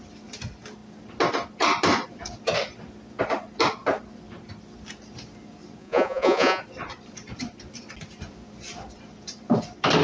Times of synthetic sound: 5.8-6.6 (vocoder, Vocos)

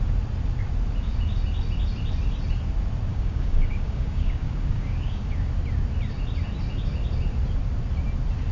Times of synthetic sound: 3.1-5.5 (codec, DAC)

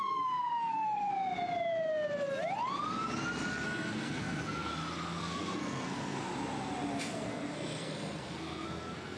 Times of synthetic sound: 0.0-1.1 (codec, SNAC); 3.5-4.7; 5.2-6.3; 7.0-9.2

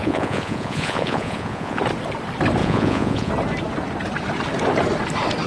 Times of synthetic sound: 0.0-1.8 (vocoder, Vocos); 2.6-3.3